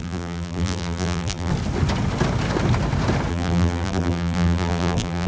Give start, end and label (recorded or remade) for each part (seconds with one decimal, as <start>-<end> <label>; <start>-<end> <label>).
0.0-1.5 remade; 1.5-3.3 recorded; 3.3-5.3 remade